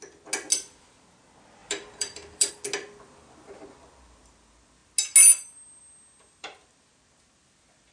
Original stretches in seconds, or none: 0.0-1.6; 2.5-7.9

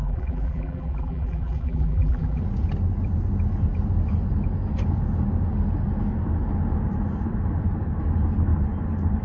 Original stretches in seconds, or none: 2.4-9.2

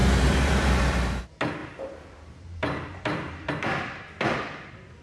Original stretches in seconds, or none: 1.2-1.6; 3.5-5.0